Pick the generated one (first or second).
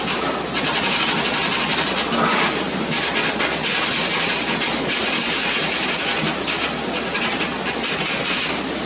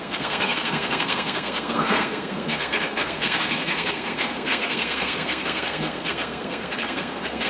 second